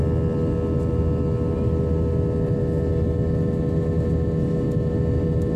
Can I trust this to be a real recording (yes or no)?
yes